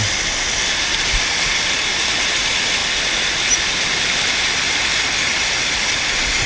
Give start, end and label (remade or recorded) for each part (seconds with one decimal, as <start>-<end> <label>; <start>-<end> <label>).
0.0-6.5 recorded